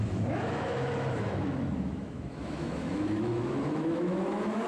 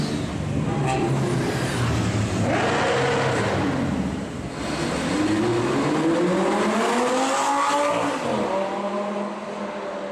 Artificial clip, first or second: first